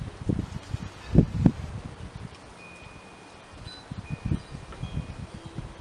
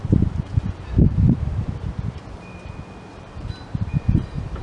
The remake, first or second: second